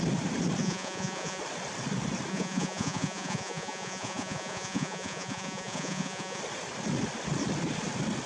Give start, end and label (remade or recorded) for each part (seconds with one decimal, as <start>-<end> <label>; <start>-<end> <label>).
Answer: 0.0-0.6 recorded; 0.6-1.4 remade; 1.4-2.3 recorded; 2.3-6.4 remade; 6.4-8.3 recorded